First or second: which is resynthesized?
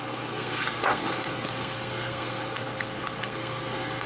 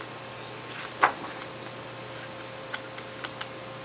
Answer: first